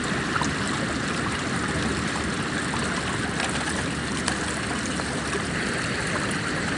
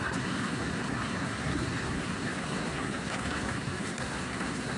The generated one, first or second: second